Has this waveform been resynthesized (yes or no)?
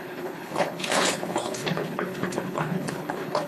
yes